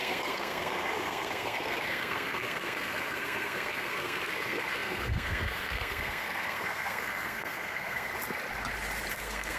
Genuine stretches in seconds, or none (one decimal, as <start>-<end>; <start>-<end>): 8.1-9.1